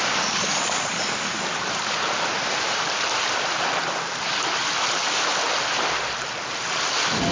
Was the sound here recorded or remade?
recorded